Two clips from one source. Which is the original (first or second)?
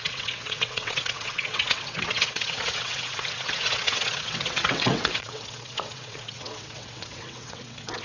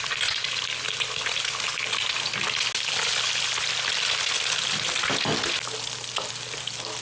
second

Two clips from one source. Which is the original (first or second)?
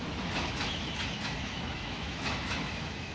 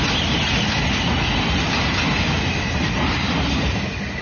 second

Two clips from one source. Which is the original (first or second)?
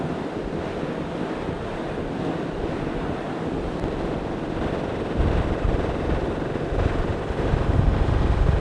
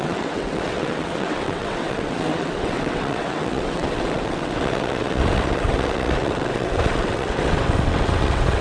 first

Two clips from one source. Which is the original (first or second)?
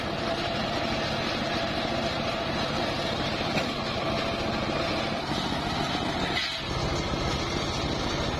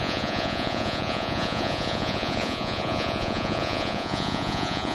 first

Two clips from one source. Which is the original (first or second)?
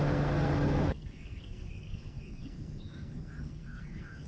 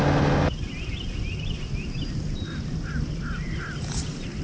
second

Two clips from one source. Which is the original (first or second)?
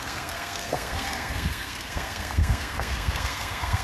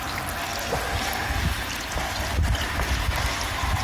second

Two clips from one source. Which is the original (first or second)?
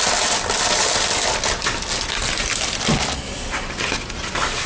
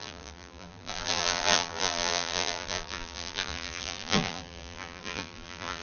first